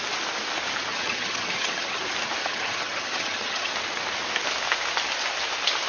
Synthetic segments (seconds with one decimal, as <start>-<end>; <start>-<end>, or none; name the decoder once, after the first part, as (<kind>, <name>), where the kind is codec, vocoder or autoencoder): 0.9-2.0 (vocoder, HiFi-GAN); 2.4-3.7